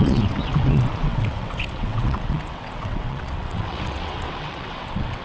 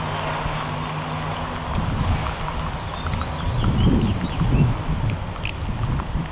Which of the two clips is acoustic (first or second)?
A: second